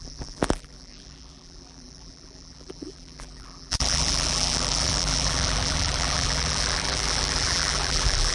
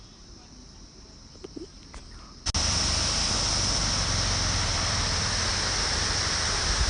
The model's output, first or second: first